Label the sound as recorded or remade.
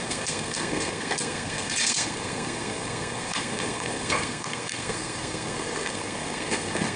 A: remade